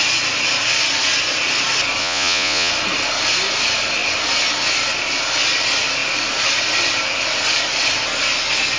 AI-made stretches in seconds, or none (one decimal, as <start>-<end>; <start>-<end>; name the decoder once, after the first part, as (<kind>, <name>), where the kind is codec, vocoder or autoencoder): 2.0-2.7 (vocoder, Vocos)